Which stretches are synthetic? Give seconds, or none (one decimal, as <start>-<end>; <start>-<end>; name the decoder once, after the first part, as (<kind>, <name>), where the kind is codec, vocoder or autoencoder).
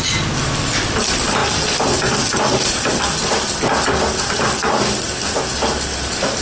none